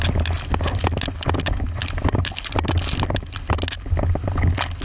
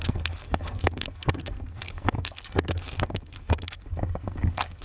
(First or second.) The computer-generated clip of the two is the second